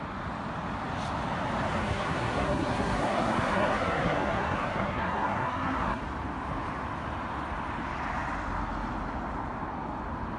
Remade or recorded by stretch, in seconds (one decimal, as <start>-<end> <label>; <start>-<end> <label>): 0.0-1.8 recorded; 1.8-6.0 remade; 6.0-10.4 recorded